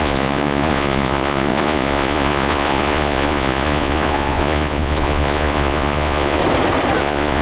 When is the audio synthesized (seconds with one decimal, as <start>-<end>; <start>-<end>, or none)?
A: 0.0-6.4; 7.0-7.4